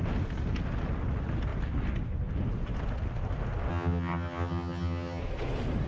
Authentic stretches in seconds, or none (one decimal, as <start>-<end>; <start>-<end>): 0.0-3.7; 5.2-5.9